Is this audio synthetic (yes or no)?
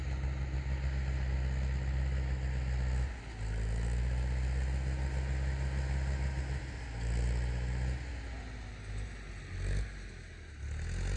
no